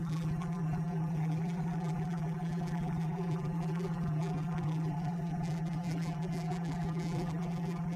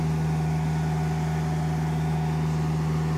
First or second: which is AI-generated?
first